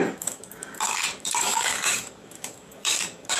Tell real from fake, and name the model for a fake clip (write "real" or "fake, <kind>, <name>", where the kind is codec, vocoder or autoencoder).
fake, codec, DAC